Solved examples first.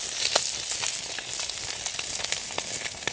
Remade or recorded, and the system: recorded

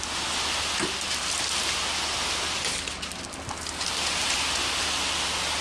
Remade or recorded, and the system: recorded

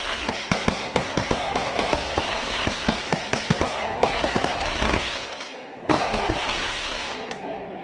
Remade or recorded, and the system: remade, codec, SNAC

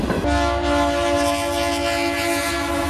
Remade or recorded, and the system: recorded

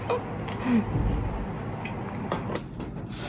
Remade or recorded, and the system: recorded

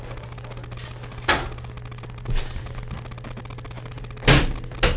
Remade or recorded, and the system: recorded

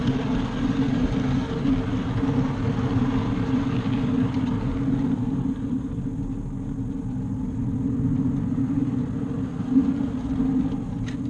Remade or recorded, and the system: recorded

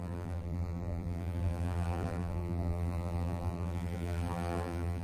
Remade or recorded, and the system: remade, vocoder, BigVGAN v2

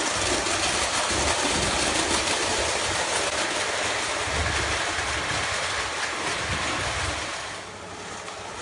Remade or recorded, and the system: recorded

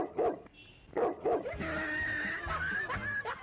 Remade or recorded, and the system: recorded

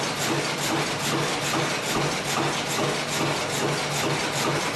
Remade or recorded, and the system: recorded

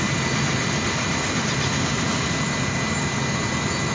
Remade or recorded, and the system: recorded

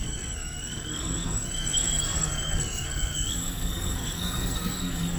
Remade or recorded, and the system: remade, codec, SNAC